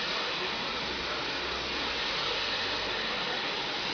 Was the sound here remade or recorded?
recorded